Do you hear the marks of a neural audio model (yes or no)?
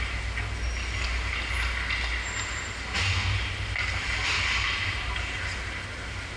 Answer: no